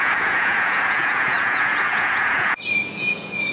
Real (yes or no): no